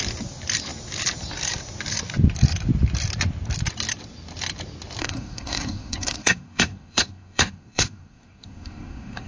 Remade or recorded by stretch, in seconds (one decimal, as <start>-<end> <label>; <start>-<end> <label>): 0.0-5.0 recorded; 5.0-9.3 remade